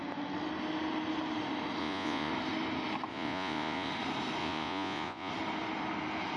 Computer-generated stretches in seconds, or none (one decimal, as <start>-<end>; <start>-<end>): 1.8-2.3; 3.1-3.9; 4.4-5.3